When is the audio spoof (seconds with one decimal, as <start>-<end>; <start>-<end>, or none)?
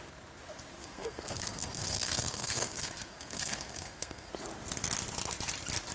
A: 0.8-4.3